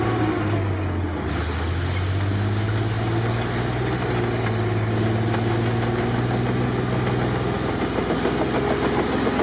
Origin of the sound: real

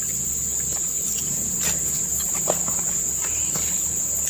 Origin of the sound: real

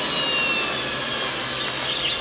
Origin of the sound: real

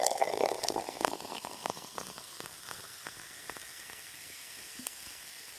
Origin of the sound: fake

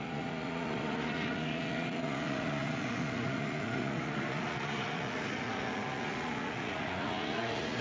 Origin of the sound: fake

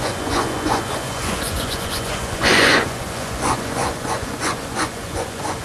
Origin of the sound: fake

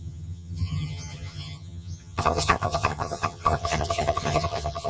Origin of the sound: fake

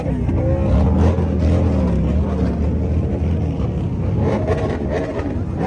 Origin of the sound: real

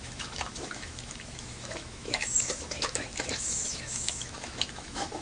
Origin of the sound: fake